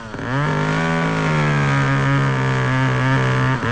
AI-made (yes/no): no